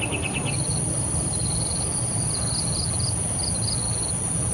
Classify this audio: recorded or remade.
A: remade